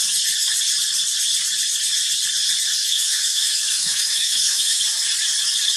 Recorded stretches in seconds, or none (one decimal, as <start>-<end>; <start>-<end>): 0.0-2.8; 4.8-5.8